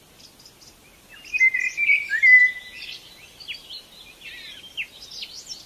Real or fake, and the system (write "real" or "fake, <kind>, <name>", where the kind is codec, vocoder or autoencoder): real